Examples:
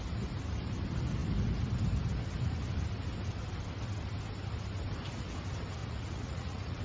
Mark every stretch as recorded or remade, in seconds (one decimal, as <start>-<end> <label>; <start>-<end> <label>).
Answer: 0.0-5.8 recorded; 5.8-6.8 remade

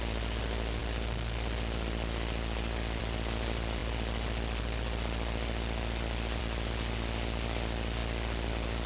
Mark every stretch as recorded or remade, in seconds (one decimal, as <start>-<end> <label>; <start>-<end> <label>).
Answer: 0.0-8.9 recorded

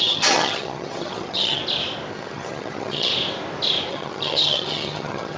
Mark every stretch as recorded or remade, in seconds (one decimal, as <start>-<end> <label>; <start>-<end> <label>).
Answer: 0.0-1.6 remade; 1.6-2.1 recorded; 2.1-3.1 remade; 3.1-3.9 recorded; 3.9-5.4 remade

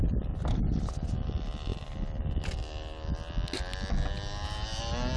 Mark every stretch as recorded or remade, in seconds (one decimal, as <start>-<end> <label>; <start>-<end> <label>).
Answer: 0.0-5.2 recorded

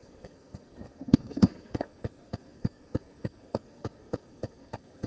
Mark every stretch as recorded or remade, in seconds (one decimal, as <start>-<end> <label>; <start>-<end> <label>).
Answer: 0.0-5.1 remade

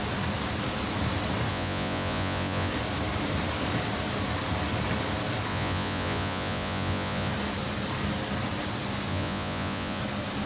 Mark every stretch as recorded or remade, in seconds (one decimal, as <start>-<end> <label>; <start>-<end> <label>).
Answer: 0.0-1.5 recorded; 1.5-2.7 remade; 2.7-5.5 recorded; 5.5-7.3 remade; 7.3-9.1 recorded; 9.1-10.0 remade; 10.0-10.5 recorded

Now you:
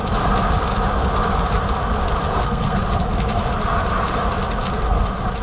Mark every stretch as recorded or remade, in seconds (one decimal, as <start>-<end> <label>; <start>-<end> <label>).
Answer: 0.0-2.3 recorded; 2.3-2.8 remade; 2.8-5.4 recorded

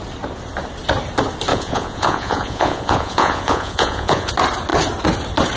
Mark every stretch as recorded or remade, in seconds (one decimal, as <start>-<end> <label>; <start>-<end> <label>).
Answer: 0.0-1.5 recorded; 1.5-4.3 remade; 4.3-5.6 recorded